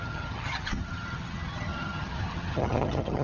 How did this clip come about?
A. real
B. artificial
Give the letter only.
B